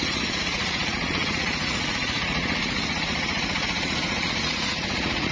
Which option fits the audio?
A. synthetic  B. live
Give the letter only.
A